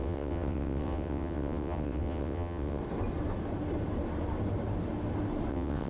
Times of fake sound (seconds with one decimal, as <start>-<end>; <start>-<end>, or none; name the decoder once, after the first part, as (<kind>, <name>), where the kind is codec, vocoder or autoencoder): 0.0-2.8 (vocoder, WaveNeXt); 5.5-5.9